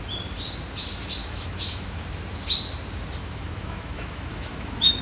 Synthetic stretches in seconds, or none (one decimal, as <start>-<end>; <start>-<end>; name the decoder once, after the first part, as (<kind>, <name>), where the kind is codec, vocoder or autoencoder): 1.2-2.0 (autoencoder, DAC-VAE); 3.2-5.0